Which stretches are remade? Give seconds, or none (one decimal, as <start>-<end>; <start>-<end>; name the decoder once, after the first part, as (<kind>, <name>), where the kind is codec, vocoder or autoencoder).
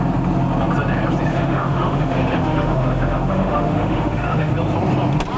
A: 1.3-4.5 (autoencoder, DAC-VAE)